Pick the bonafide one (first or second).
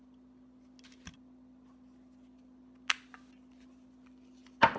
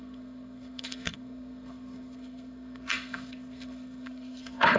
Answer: first